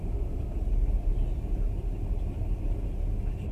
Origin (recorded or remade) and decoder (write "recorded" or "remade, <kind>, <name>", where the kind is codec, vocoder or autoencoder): recorded